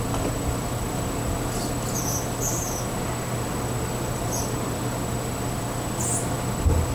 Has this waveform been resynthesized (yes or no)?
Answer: no